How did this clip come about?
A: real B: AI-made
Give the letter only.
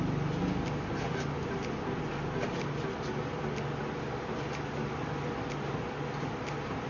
A